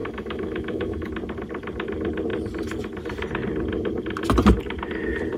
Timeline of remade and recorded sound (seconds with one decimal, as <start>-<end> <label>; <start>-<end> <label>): 0.0-1.1 remade; 1.1-5.4 recorded